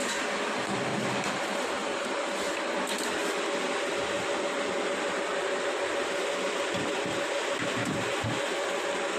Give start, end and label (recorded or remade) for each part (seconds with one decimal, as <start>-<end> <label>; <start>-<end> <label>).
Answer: 0.0-0.9 recorded; 0.9-1.4 remade; 1.4-1.8 recorded; 1.8-2.7 remade; 2.7-9.2 recorded